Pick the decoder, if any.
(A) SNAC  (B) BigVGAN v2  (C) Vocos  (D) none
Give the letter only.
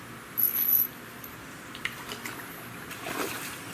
B